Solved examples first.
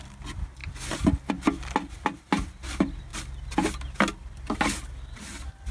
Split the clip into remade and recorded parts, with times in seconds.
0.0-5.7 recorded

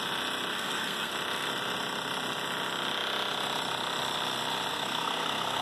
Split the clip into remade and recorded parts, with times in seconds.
0.0-0.5 recorded; 0.5-1.1 remade; 1.1-4.7 recorded; 4.7-5.6 remade

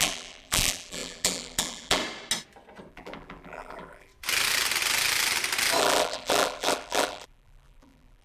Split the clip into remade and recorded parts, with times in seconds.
0.0-2.0 remade; 2.0-2.9 recorded; 2.9-4.1 remade; 4.1-5.8 recorded; 5.8-8.2 remade

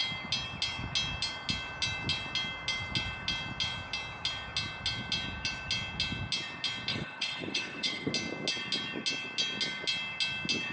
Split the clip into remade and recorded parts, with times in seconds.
0.0-6.9 recorded; 6.9-8.1 remade; 8.1-10.7 recorded

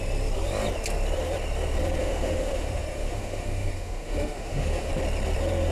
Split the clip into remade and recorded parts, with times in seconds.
0.0-2.0 recorded; 2.0-4.9 remade; 4.9-5.7 recorded

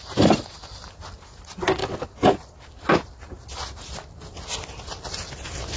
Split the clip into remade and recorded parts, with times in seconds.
0.0-5.8 recorded

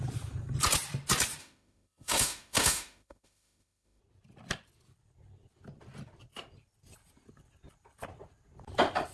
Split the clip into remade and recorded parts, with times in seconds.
0.0-1.4 recorded; 1.4-4.0 remade; 4.0-9.1 recorded